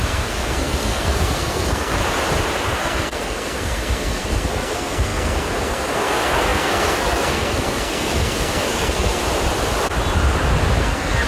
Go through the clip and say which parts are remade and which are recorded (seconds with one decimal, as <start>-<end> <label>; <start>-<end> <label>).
0.0-2.0 remade; 2.0-2.7 recorded; 2.7-9.2 remade; 9.2-10.7 recorded; 10.7-11.3 remade